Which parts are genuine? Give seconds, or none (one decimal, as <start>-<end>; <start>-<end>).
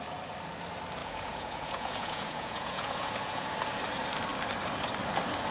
0.0-1.0; 3.5-5.5